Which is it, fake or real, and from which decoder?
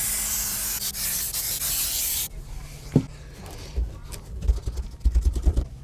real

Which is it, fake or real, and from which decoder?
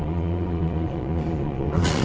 fake, vocoder, Vocos